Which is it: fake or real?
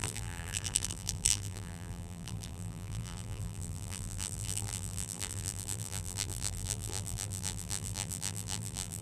fake